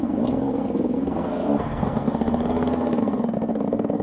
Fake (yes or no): yes